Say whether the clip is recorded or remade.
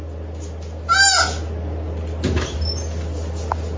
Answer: recorded